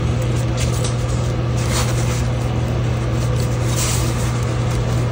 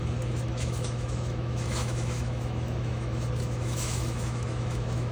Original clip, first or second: first